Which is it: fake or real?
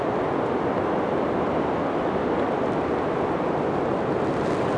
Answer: real